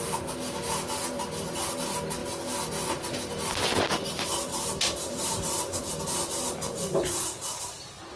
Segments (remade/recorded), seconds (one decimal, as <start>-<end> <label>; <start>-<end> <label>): 0.0-4.5 recorded; 4.5-5.8 remade; 5.8-8.2 recorded